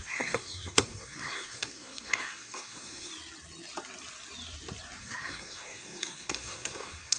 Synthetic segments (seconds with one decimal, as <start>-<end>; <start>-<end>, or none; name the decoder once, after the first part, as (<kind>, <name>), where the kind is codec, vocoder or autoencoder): 0.0-3.1 (codec, SNAC); 5.0-7.2